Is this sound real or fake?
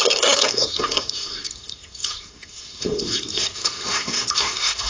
fake